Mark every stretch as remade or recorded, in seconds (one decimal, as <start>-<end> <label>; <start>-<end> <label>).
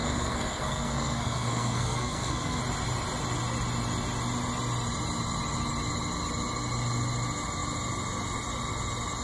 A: 0.0-2.6 remade; 2.6-9.2 recorded